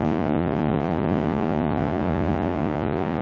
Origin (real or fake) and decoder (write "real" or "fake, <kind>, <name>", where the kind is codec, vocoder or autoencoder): fake, vocoder, Vocos